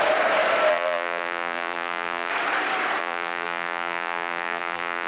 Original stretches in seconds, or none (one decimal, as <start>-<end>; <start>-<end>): 0.0-0.7; 2.3-3.0